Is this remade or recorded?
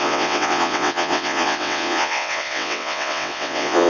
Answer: remade